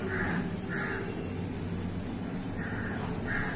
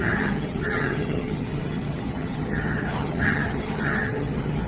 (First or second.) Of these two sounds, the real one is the first